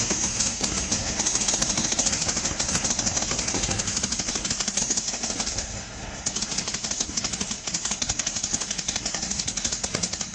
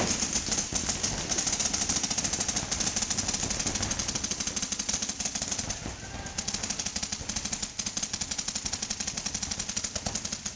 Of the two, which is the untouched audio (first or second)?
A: second